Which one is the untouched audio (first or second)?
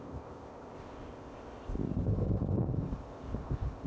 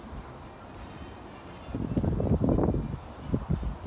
second